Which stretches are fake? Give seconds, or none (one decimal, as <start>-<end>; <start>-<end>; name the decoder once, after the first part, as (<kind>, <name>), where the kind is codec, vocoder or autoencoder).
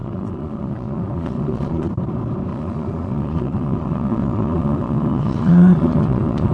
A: 0.0-1.9 (vocoder, Vocos); 2.5-6.5